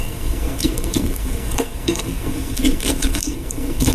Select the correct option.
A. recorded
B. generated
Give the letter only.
B